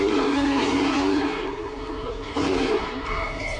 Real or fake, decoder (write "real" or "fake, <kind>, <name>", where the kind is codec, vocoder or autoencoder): fake, codec, SNAC